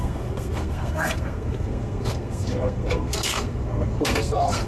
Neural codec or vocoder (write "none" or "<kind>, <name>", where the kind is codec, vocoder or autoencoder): codec, SNAC